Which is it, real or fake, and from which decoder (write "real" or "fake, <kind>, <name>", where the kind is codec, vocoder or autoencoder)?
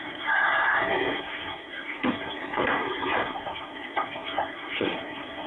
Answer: fake, codec, SNAC